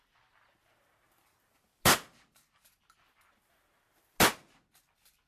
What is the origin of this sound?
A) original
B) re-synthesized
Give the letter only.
A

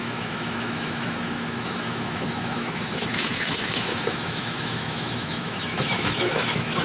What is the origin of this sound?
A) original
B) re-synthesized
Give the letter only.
B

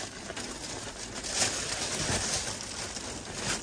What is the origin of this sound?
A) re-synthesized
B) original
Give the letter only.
B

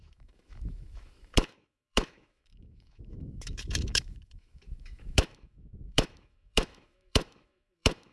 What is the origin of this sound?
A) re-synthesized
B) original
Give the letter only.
A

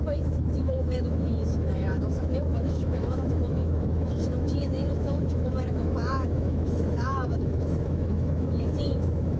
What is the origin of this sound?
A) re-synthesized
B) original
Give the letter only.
A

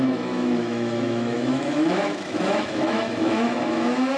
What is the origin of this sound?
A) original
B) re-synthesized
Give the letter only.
B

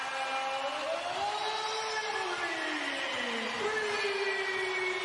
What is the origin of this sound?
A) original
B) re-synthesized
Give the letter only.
A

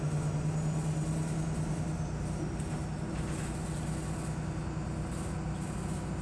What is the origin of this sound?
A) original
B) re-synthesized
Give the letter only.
A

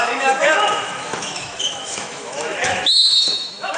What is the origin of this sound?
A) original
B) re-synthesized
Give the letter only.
B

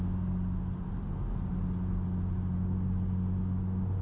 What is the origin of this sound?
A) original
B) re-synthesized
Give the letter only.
A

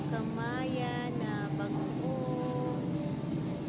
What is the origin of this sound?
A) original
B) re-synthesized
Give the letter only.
A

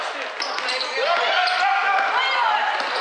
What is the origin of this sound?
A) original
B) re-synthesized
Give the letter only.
A